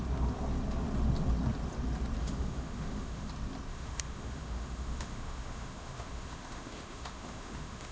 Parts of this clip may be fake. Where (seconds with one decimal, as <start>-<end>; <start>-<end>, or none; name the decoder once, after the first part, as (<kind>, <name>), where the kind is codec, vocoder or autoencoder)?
2.2-3.3 (autoencoder, DAC-VAE); 3.7-7.9